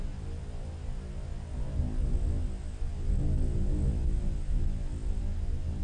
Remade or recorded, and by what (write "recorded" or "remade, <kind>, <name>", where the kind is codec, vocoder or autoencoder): recorded